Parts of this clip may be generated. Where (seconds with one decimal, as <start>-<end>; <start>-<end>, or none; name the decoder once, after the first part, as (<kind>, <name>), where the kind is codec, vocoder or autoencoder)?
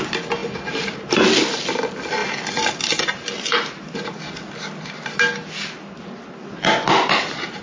none